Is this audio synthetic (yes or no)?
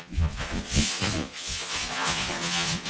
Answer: yes